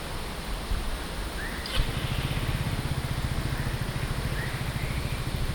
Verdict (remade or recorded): recorded